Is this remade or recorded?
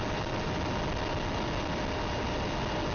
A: recorded